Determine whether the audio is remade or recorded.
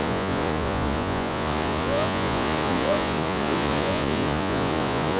remade